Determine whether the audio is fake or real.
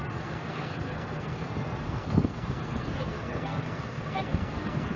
fake